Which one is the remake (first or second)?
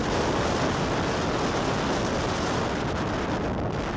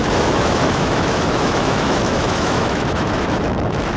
second